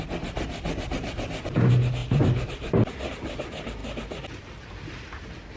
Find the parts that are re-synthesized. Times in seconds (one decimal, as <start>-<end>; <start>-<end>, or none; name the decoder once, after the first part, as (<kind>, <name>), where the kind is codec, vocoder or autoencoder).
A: 2.0-3.1 (vocoder, BigVGAN v2)